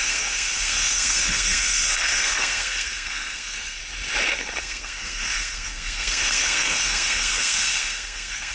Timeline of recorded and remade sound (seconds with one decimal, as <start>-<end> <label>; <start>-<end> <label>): 0.0-3.8 remade; 3.8-4.6 recorded; 4.6-8.5 remade